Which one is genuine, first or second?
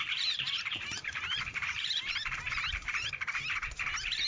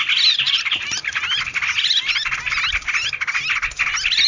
second